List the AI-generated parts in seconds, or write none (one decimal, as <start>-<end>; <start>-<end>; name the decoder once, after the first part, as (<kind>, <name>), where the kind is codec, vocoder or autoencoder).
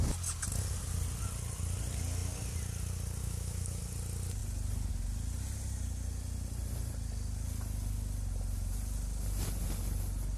3.2-3.8 (autoencoder, DAC-VAE)